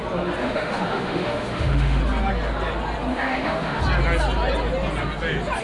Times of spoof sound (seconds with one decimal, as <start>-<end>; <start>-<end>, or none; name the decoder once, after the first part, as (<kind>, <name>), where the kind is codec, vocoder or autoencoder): 0.4-2.0 (autoencoder, DAC-VAE); 3.1-3.8